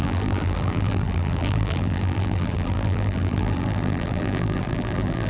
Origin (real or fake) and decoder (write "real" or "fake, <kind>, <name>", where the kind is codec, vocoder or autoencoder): fake, vocoder, BigVGAN v2